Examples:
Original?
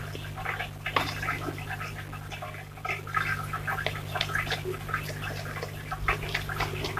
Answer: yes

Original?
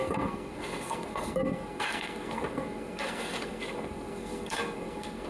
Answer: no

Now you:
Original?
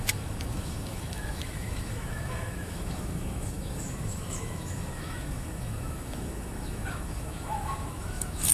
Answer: no